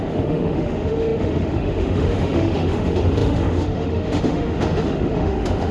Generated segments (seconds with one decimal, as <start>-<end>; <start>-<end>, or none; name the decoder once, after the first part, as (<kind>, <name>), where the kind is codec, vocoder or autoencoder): 0.0-5.7 (autoencoder, DAC-VAE)